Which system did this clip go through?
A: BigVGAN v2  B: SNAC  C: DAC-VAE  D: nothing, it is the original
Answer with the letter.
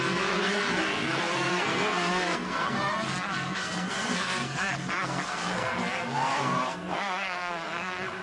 B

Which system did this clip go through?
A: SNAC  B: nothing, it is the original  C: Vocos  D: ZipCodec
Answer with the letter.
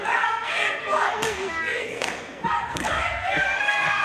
A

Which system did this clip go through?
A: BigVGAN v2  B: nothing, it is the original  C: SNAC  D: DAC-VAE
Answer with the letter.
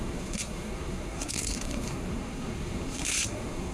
C